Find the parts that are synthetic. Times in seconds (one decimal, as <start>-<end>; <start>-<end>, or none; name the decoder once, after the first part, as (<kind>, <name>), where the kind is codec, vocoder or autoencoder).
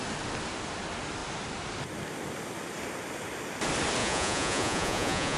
4.0-5.4 (vocoder, Vocos)